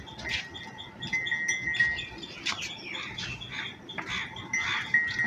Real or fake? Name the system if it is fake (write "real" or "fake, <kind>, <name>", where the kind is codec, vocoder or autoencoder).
real